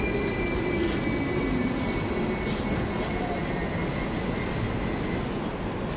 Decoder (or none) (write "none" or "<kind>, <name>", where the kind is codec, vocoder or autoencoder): none